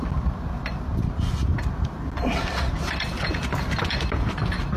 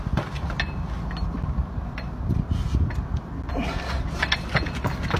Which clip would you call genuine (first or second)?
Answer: second